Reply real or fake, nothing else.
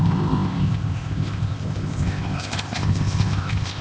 fake